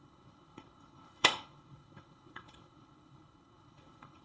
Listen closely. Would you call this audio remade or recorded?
remade